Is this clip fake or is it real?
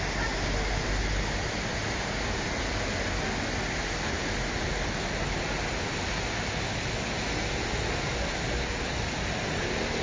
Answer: real